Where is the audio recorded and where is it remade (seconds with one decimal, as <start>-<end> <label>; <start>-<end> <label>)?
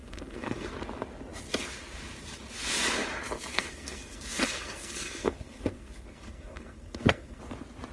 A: 0.0-0.7 remade; 0.7-3.5 recorded; 3.5-7.4 remade; 7.4-7.9 recorded